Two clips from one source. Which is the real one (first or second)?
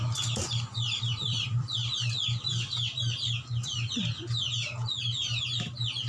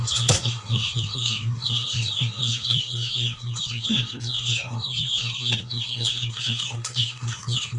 first